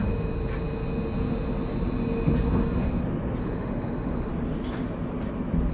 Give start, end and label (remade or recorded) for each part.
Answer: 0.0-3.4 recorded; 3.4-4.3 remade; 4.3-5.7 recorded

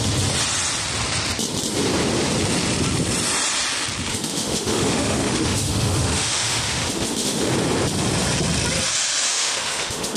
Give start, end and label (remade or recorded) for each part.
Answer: 0.0-4.1 recorded; 4.1-7.5 remade; 7.5-9.3 recorded; 9.3-10.2 remade